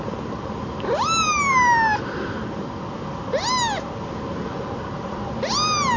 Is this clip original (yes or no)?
yes